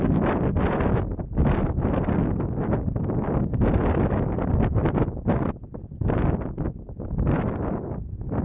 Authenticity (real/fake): real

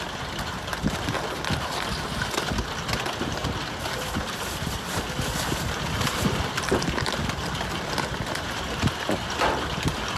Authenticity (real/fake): real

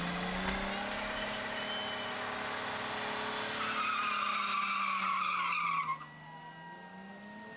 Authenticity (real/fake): real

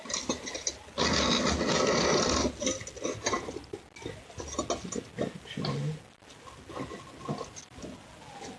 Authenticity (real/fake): real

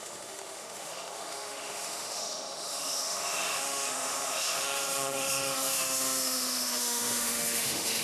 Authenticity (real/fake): fake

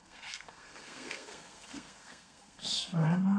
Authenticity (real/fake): fake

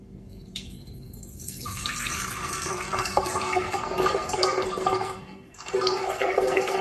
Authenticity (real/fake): fake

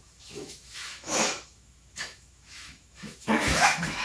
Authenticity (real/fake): fake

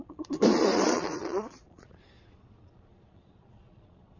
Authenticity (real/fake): fake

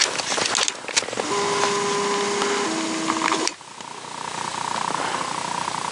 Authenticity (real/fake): real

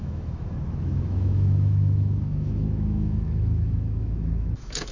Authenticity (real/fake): fake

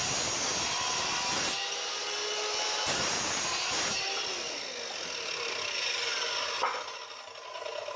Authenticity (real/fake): real